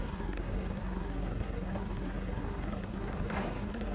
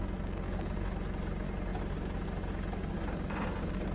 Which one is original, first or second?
second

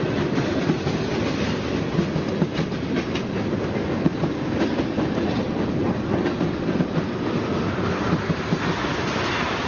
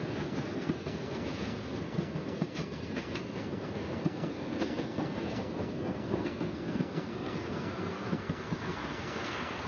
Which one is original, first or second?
first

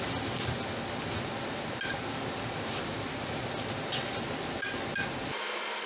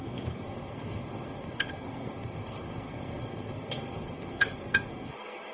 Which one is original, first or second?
first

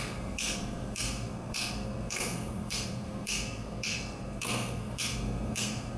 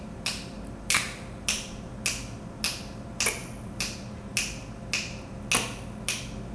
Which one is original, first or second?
second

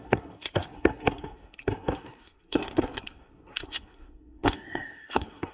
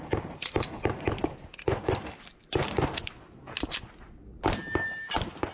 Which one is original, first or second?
second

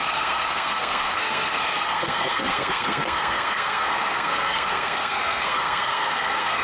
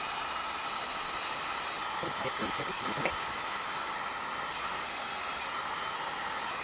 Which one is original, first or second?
second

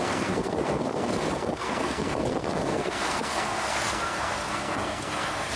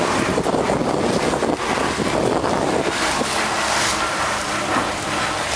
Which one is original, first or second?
second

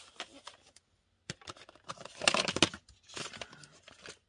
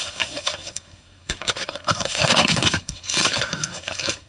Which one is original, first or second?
first